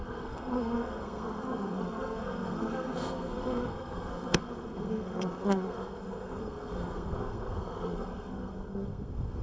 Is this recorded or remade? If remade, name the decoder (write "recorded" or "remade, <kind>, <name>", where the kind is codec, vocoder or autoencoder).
remade, codec, SNAC